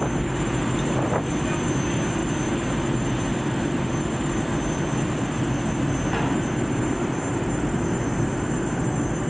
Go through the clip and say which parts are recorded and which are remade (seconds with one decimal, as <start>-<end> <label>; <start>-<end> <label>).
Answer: 0.0-9.3 recorded